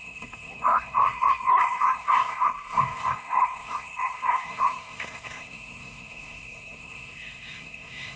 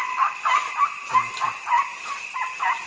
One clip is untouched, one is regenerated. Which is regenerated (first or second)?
first